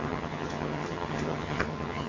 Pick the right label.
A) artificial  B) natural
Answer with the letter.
A